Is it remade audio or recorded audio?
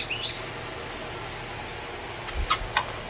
recorded